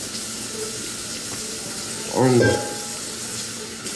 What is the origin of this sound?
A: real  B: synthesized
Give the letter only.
A